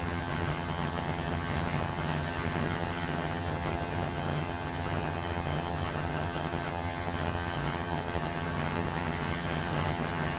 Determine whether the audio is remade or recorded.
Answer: remade